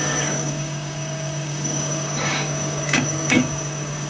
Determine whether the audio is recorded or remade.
remade